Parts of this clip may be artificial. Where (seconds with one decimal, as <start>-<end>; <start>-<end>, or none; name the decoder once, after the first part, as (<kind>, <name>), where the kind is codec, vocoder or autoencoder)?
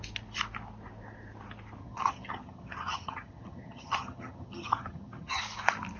1.8-5.4 (vocoder, HiFi-GAN)